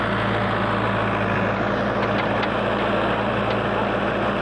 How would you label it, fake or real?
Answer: real